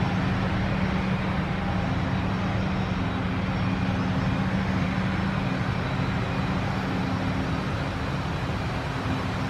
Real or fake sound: real